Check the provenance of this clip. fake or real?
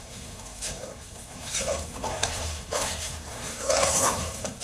fake